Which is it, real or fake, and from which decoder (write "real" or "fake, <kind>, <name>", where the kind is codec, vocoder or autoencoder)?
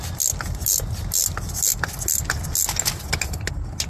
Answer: real